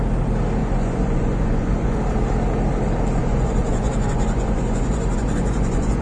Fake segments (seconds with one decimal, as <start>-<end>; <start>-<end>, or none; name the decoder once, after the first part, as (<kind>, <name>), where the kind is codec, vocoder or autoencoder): 0.6-2.0 (vocoder, Vocos); 3.2-6.0